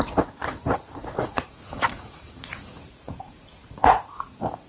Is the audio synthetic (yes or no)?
yes